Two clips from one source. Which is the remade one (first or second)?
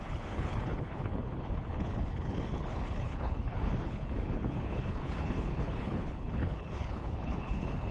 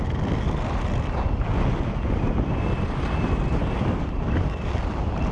first